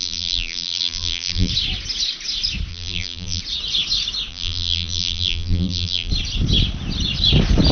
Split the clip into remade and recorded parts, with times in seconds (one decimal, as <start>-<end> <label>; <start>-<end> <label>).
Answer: 0.0-1.5 remade; 1.5-2.7 recorded; 2.7-3.4 remade; 3.4-4.3 recorded; 4.3-6.1 remade; 6.1-7.7 recorded